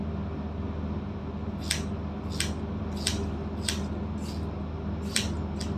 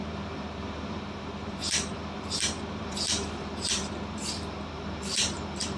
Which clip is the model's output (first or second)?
second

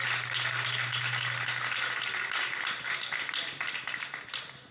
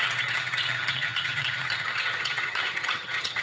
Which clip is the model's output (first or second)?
second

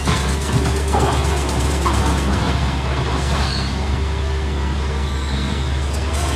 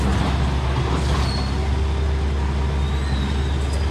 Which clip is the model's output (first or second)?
first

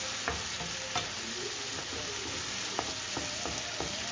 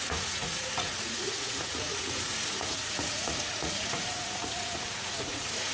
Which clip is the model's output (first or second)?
second